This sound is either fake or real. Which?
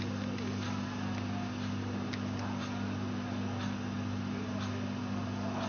real